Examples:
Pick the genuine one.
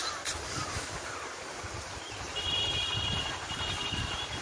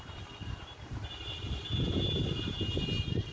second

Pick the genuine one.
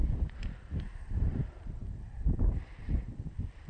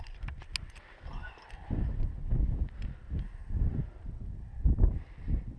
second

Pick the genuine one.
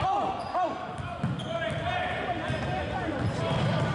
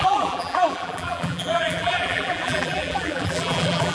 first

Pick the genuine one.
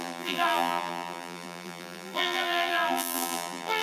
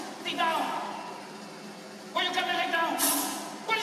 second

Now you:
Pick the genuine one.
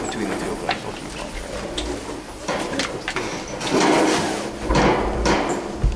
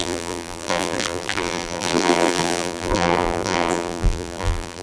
first